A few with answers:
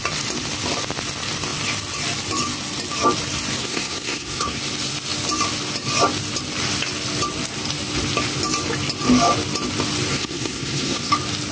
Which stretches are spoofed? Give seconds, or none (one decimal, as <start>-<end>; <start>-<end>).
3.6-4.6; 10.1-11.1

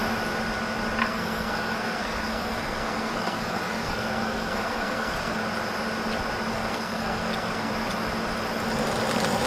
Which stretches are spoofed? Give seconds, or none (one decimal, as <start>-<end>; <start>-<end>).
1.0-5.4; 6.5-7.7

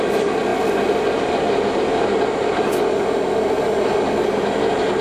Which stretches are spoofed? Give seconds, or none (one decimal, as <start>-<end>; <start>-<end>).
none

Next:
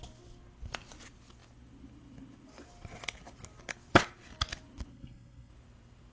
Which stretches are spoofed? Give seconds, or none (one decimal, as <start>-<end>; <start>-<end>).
4.9-5.5

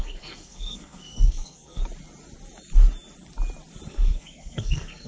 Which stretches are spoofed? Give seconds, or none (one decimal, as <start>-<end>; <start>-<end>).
0.0-1.8; 3.9-5.1